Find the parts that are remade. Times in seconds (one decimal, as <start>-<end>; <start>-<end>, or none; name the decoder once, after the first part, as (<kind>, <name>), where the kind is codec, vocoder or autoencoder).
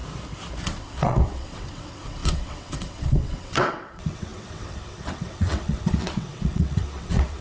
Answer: 0.6-7.4 (vocoder, WaveNeXt)